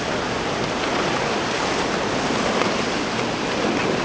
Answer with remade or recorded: recorded